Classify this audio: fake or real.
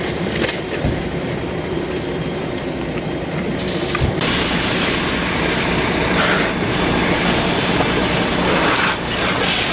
fake